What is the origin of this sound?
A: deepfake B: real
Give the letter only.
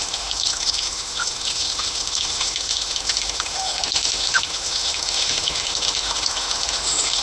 A